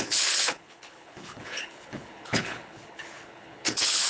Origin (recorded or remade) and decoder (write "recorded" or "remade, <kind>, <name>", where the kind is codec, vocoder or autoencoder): remade, codec, HILCodec